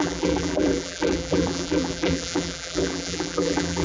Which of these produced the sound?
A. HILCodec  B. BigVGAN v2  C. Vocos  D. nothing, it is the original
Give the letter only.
B